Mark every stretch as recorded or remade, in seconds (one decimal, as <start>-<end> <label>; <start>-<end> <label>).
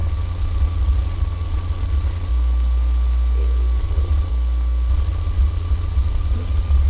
0.0-2.3 remade; 2.3-3.8 recorded; 3.8-4.3 remade; 4.3-4.9 recorded; 4.9-6.9 remade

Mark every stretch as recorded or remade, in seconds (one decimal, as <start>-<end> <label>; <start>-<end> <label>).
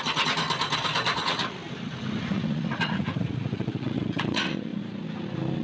0.0-0.4 remade; 0.4-1.1 recorded; 1.1-1.6 remade; 1.6-2.2 recorded; 2.2-4.7 remade; 4.7-5.6 recorded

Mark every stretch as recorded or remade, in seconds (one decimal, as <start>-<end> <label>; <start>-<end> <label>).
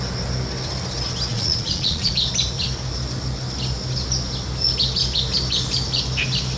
0.0-1.3 recorded; 1.3-2.1 remade; 2.1-6.6 recorded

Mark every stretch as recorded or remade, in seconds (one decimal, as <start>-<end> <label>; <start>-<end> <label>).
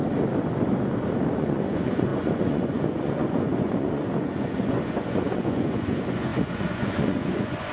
0.0-1.3 recorded; 1.3-7.7 remade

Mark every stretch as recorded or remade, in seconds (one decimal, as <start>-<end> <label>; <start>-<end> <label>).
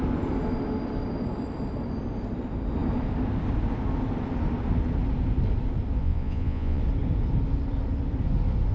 0.0-6.0 recorded; 6.0-6.8 remade; 6.8-8.7 recorded